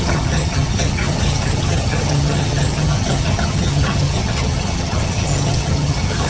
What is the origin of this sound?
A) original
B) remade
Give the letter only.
B